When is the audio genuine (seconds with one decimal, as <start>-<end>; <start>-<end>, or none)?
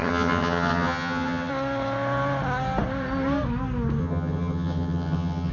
1.5-4.0